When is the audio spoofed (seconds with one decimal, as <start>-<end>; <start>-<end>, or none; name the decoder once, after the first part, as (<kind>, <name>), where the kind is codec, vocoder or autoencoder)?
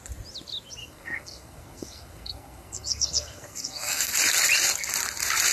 0.8-4.1 (codec, SNAC)